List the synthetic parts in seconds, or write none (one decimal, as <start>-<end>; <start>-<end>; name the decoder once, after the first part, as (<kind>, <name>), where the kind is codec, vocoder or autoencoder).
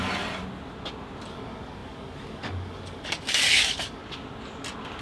1.3-4.0 (codec, DAC)